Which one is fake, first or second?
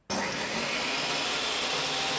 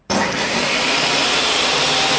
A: second